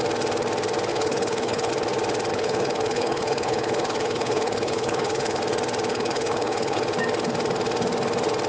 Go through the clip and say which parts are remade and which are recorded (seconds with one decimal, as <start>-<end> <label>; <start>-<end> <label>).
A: 0.0-0.9 recorded; 0.9-1.7 remade; 1.7-2.3 recorded; 2.3-5.4 remade; 5.4-5.9 recorded; 5.9-6.8 remade; 6.8-8.5 recorded

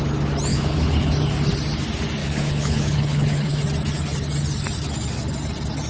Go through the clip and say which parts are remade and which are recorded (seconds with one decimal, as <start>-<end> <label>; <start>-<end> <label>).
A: 0.0-0.5 recorded; 0.5-1.1 remade; 1.1-2.2 recorded; 2.2-3.6 remade; 3.6-5.9 recorded

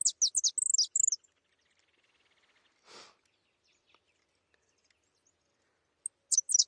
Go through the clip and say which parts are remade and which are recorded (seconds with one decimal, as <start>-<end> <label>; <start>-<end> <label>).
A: 0.0-6.7 recorded

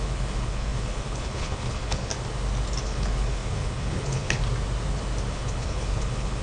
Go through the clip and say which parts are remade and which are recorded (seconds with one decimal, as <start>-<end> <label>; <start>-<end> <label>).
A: 0.0-2.1 remade; 2.1-2.8 recorded; 2.8-4.4 remade; 4.4-5.3 recorded; 5.3-6.4 remade

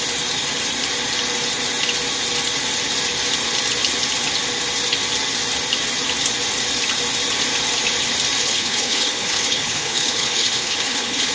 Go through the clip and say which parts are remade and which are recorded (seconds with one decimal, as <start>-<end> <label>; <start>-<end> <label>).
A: 0.0-8.4 recorded; 8.4-11.3 remade

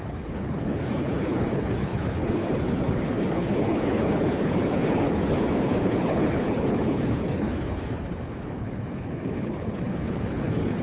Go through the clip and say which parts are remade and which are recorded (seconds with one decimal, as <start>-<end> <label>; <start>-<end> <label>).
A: 0.0-10.8 remade